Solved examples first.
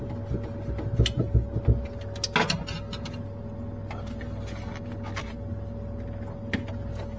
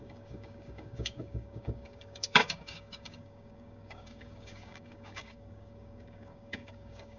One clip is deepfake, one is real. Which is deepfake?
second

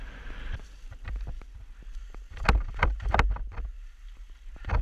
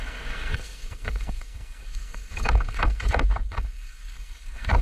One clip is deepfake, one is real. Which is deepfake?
second